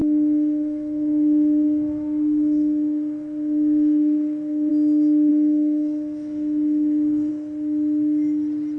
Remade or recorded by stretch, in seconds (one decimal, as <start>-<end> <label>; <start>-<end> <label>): 0.0-4.7 remade; 4.7-5.3 recorded; 5.3-7.3 remade; 7.3-8.8 recorded